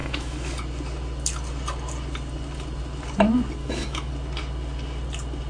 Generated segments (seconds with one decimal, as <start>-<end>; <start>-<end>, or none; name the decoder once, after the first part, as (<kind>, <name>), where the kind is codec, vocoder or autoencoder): 0.0-0.6 (autoencoder, DAC-VAE); 3.6-4.1